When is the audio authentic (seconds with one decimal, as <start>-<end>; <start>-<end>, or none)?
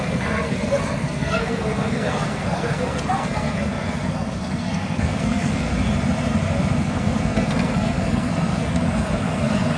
5.7-6.8